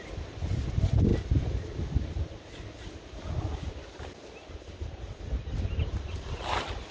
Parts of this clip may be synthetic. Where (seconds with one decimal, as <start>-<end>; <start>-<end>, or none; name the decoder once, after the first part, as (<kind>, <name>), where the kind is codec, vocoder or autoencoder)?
none